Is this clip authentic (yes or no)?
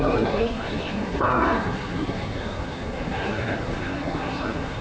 no